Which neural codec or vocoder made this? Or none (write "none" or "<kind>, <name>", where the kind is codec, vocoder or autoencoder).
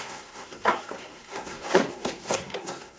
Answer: codec, SNAC